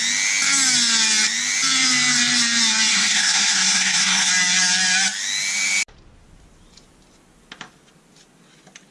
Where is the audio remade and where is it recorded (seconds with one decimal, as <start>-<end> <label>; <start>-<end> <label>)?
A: 0.0-2.9 recorded; 2.9-4.3 remade; 4.3-8.9 recorded